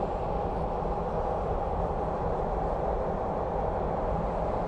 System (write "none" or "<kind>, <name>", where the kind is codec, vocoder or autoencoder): none